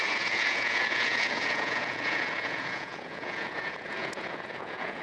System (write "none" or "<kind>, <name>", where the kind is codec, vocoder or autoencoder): vocoder, Vocos